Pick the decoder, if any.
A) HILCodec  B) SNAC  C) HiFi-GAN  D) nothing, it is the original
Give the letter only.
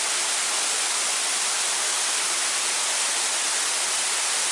D